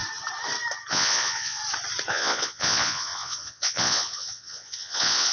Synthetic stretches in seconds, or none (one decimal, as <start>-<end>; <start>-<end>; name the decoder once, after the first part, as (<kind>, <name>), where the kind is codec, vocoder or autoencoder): 0.9-1.6 (vocoder, Vocos); 2.1-5.3